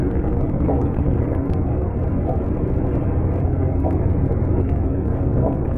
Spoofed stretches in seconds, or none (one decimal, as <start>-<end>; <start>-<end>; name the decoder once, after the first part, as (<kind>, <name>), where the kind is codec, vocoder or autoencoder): 0.0-1.9 (codec, SNAC); 3.4-4.1; 4.6-5.8

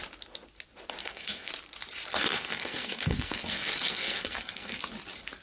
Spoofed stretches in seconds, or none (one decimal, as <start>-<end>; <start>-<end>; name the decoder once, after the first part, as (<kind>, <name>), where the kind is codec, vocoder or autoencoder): 1.0-1.5 (codec, SNAC); 2.1-4.8

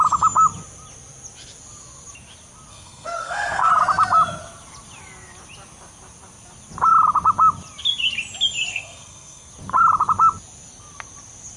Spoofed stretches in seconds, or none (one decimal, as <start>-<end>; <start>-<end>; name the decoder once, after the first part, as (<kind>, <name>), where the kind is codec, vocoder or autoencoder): 2.7-3.7 (codec, SNAC); 8.7-9.5

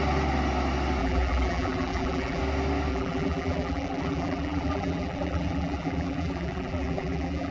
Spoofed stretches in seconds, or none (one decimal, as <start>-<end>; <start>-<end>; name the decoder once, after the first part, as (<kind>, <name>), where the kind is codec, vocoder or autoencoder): 1.0-2.4 (vocoder, BigVGAN v2); 2.9-7.5

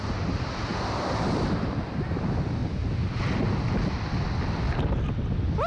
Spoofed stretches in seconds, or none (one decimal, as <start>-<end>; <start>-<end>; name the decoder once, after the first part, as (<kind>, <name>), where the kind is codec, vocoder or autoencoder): 0.7-1.9 (vocoder, BigVGAN v2); 2.6-3.2

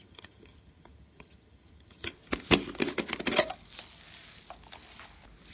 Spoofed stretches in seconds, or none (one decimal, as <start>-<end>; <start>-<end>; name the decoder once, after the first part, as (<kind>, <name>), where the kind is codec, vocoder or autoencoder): 0.0-2.1 (vocoder, HiFi-GAN)

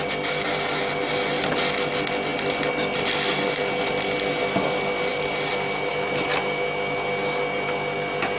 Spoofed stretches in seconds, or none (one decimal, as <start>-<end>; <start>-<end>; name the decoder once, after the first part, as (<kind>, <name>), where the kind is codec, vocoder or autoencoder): none

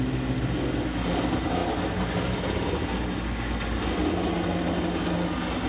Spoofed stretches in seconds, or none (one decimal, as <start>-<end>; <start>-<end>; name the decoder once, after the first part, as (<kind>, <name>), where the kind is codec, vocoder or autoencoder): none